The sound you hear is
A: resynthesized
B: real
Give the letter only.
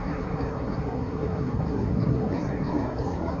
A